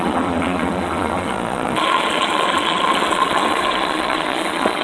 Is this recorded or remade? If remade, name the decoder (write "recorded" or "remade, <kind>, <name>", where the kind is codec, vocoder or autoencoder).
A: remade, vocoder, Vocos